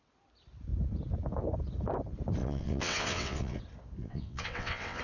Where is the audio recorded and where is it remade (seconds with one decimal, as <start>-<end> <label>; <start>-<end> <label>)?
0.0-2.4 recorded; 2.4-3.6 remade; 3.6-4.0 recorded; 4.0-5.0 remade